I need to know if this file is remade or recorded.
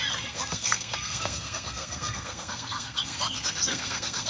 remade